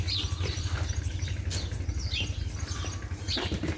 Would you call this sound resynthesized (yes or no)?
no